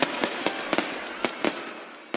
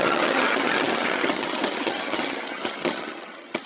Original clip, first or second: first